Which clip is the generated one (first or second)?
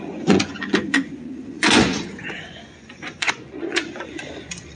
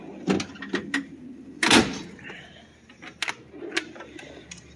first